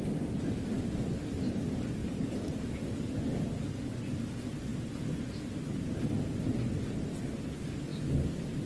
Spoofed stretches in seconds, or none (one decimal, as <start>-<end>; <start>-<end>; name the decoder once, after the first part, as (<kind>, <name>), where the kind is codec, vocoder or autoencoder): 2.0-2.6 (vocoder, BigVGAN v2)